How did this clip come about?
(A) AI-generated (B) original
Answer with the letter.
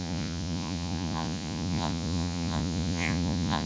A